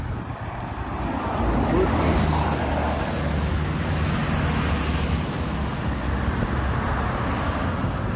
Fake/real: real